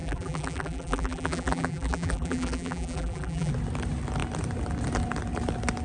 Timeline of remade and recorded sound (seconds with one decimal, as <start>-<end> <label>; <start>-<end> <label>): 0.0-3.5 remade; 3.5-5.8 recorded